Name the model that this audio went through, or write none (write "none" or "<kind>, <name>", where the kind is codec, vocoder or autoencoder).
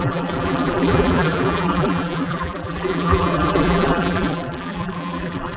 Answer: vocoder, BigVGAN v2